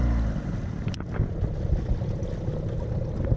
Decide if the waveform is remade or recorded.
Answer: recorded